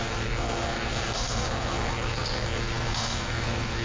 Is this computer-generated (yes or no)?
yes